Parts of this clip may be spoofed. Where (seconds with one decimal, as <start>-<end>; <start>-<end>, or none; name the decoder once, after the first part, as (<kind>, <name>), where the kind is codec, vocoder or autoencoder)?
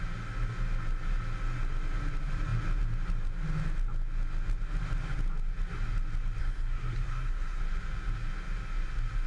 6.4-7.6 (codec, SNAC)